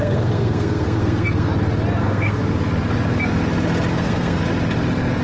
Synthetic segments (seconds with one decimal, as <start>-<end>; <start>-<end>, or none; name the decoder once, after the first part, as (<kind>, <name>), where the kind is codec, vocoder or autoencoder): 0.0-1.5 (codec, SNAC); 2.0-2.4; 3.9-4.4